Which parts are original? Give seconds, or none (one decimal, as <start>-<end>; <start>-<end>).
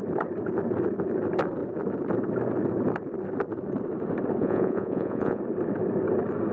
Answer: 0.0-4.4; 5.4-6.5